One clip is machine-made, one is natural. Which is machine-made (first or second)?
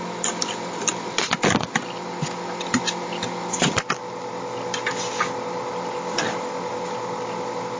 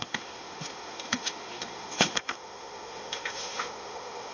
second